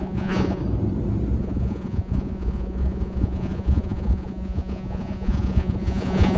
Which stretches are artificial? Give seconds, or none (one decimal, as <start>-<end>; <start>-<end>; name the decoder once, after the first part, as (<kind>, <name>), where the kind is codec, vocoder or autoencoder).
0.0-0.6 (vocoder, Vocos); 1.4-6.4